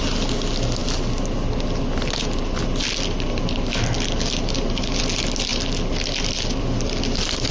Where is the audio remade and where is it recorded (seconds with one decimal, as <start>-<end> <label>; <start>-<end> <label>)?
0.0-7.5 recorded